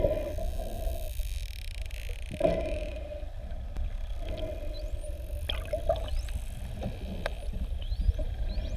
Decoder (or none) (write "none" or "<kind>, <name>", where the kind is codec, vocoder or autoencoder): none